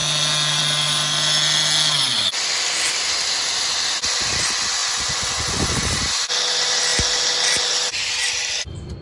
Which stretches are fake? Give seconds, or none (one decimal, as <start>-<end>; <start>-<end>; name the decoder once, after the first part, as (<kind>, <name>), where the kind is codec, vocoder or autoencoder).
4.8-5.9 (vocoder, Vocos)